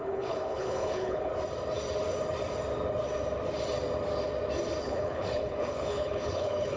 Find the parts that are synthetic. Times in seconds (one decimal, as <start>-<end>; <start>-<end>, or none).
0.0-1.3; 4.8-6.8